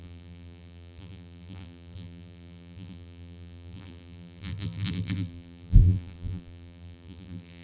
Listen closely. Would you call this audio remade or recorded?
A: remade